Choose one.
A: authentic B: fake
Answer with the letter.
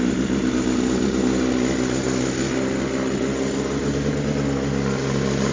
A